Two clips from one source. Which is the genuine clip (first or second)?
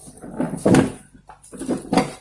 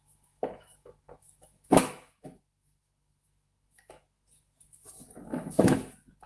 first